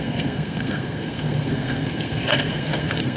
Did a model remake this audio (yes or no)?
yes